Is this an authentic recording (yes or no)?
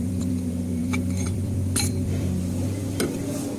no